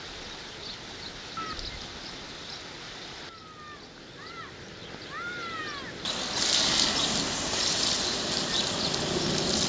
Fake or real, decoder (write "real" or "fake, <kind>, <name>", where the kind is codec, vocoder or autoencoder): real